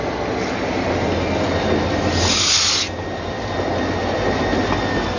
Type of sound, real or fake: real